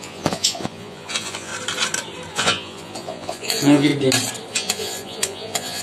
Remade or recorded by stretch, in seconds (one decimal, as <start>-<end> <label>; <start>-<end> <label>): 0.0-1.5 remade; 1.5-2.3 recorded; 2.3-3.9 remade; 3.9-4.5 recorded; 4.5-5.8 remade